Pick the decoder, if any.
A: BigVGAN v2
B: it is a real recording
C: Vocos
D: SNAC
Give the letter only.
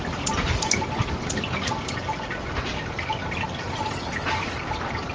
B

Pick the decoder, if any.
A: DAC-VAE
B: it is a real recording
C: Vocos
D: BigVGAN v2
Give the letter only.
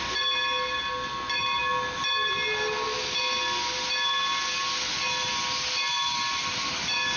B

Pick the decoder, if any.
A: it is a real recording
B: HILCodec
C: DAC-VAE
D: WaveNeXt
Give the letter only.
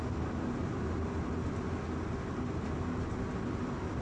A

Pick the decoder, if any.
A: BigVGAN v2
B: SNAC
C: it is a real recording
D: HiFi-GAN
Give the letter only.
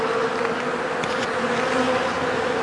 C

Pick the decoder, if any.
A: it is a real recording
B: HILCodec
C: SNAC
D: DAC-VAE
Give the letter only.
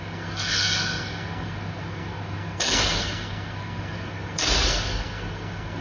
C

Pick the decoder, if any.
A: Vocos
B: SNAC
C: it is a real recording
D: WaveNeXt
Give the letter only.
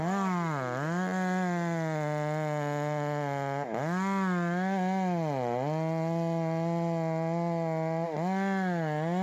C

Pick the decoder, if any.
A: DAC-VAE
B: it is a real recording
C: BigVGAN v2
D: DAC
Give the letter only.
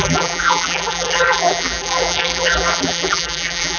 C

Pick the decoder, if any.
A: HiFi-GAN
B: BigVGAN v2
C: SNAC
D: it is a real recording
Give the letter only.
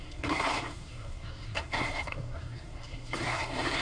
C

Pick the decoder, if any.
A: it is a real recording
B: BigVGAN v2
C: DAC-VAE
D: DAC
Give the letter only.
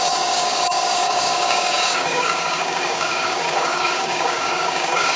D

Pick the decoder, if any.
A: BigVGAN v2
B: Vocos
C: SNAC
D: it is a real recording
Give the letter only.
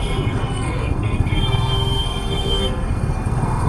C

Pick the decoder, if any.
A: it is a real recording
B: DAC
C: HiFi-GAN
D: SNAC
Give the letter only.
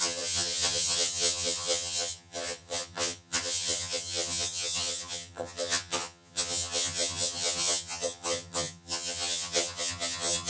C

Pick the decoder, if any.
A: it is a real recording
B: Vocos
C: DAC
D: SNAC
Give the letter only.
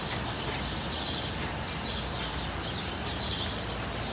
A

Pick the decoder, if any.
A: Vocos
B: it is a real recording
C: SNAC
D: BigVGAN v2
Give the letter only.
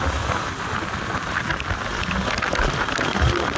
B